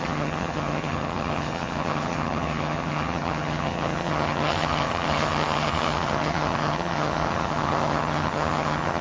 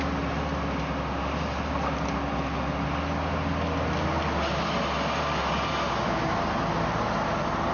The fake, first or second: first